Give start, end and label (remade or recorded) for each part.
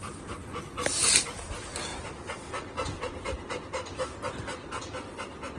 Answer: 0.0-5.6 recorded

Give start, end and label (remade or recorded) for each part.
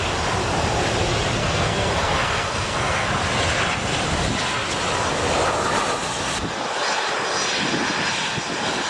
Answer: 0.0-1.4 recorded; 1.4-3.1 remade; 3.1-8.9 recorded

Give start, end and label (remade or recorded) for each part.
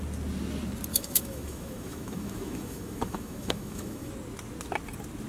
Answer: 0.0-0.9 recorded; 0.9-4.1 remade; 4.1-5.3 recorded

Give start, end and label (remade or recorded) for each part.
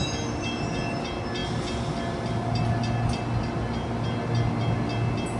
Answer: 0.0-5.4 recorded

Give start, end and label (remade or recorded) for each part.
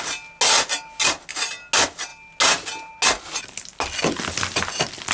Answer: 0.0-5.1 recorded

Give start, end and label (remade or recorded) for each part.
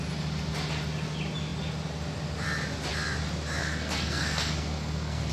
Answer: 0.0-3.6 recorded; 3.6-5.3 remade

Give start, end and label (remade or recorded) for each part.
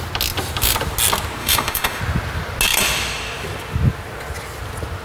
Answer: 0.0-1.4 recorded; 1.4-2.0 remade; 2.0-5.0 recorded